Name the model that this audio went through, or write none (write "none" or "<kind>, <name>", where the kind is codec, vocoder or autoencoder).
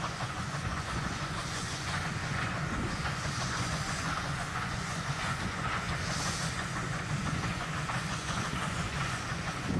vocoder, Vocos